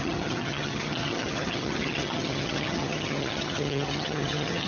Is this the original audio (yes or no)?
no